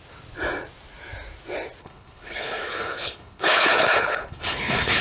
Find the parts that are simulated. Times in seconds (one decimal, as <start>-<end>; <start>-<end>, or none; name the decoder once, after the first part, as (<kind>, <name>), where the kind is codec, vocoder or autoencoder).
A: 1.8-5.0 (codec, HILCodec)